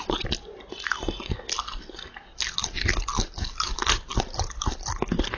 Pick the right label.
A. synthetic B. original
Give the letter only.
B